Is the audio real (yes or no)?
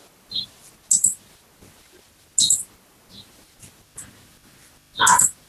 yes